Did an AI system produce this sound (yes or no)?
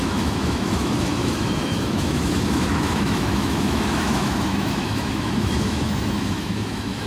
yes